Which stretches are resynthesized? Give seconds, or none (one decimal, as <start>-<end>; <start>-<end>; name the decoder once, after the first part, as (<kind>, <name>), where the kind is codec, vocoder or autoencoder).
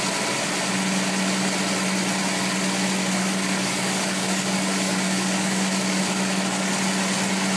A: 3.0-6.7 (codec, DAC)